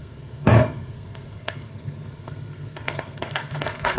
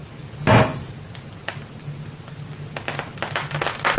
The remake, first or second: first